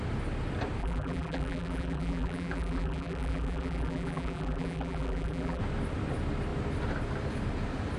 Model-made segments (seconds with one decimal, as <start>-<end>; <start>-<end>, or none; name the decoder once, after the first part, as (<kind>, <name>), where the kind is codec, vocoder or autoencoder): 0.8-5.6 (vocoder, BigVGAN v2)